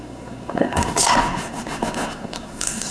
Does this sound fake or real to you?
fake